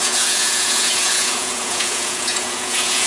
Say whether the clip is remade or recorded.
remade